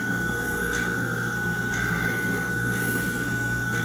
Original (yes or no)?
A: no